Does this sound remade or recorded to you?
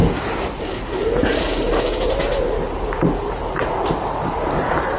remade